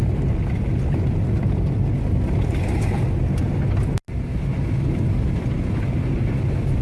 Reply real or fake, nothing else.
real